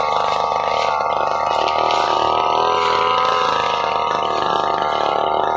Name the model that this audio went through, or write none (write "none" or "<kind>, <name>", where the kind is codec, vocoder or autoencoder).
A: none